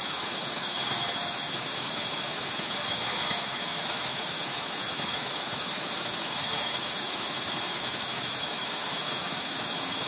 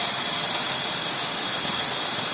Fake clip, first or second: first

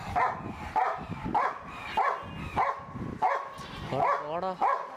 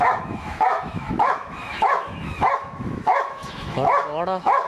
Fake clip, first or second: second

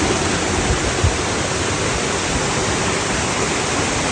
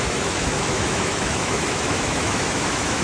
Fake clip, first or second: second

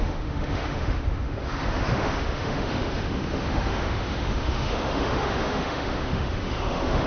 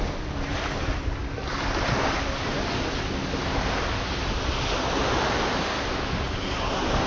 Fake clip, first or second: first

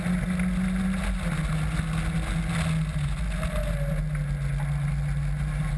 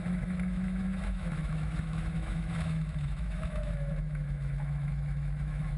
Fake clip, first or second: second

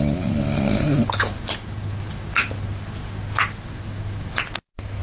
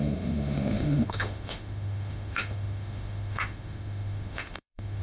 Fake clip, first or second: second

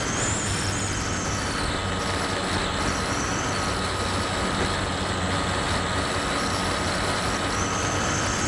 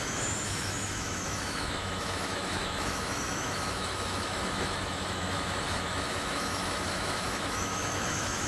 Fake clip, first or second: second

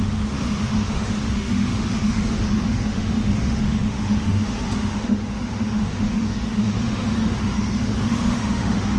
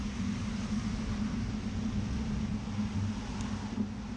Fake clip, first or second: first